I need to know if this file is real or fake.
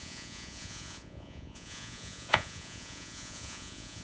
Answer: fake